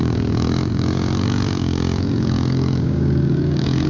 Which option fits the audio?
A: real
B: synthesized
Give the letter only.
B